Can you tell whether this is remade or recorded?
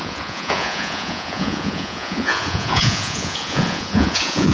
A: remade